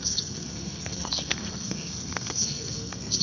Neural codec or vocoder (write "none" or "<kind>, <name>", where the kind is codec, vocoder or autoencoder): codec, SNAC